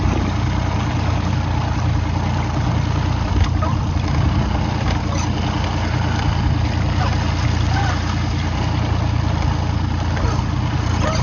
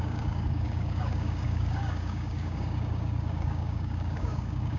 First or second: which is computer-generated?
second